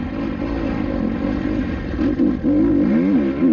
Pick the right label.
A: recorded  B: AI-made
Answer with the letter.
A